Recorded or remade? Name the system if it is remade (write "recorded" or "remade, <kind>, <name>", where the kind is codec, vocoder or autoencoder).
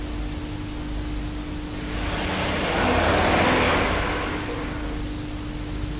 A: recorded